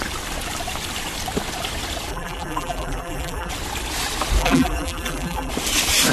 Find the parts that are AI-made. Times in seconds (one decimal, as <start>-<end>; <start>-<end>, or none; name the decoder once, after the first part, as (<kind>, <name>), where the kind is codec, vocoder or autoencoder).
2.1-3.5 (vocoder, BigVGAN v2); 4.4-5.5